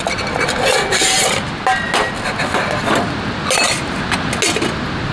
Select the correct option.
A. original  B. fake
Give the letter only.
A